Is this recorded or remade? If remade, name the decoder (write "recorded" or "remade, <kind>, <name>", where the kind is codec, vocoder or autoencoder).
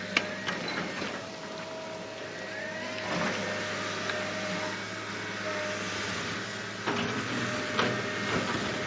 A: recorded